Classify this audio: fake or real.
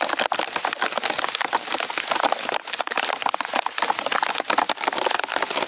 real